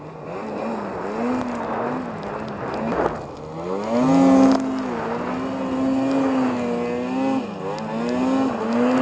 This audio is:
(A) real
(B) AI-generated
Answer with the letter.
A